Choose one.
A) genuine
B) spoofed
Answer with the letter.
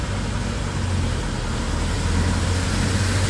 A